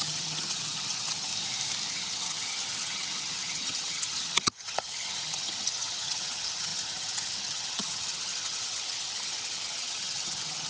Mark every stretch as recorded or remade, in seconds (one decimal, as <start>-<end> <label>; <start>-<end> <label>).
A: 0.0-1.3 remade; 1.3-1.9 recorded; 1.9-10.7 remade